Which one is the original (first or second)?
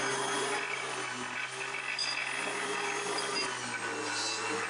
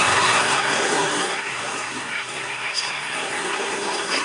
first